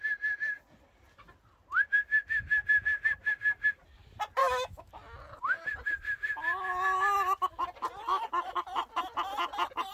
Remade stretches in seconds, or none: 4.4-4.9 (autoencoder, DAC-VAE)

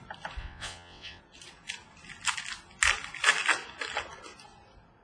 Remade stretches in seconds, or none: 0.4-1.2 (vocoder, WaveNeXt)

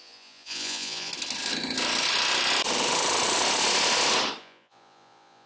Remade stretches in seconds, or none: 0.0-1.1 (vocoder, Vocos); 4.4-5.5

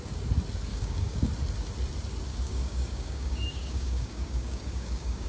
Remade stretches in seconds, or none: 0.7-1.3 (codec, DAC); 2.3-5.3

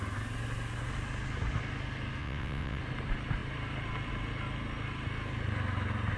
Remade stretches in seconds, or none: 2.2-2.8 (vocoder, WaveNeXt)

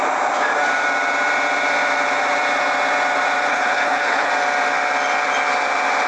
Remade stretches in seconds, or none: 3.5-4.3 (codec, HILCodec)

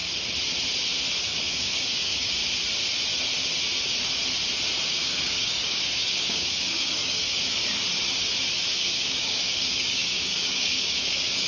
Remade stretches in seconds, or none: 1.2-2.4 (codec, DAC); 4.9-7.6; 8.8-11.5